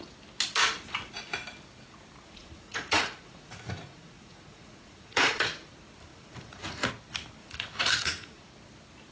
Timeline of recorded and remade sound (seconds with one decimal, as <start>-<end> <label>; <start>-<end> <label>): 0.0-2.4 recorded; 2.4-5.4 remade; 5.4-6.1 recorded; 6.1-6.9 remade; 6.9-7.4 recorded; 7.4-8.5 remade; 8.5-9.1 recorded